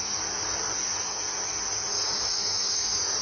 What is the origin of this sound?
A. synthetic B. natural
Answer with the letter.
B